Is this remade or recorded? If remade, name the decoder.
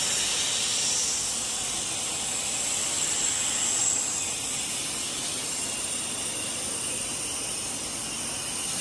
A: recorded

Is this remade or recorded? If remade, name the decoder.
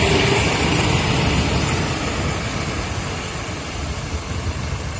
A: remade, vocoder, BigVGAN v2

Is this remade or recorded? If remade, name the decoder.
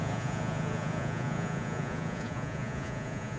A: remade, vocoder, Vocos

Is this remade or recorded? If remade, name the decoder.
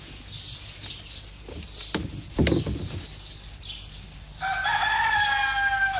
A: recorded